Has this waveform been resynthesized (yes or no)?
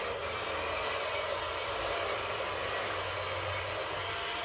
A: no